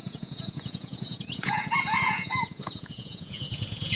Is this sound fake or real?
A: fake